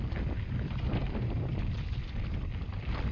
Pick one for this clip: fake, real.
real